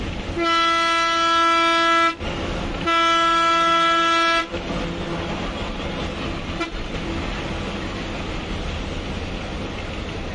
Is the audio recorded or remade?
recorded